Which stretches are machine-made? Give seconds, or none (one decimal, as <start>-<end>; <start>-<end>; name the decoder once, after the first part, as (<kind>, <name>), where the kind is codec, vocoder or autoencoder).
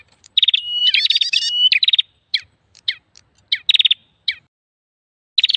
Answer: none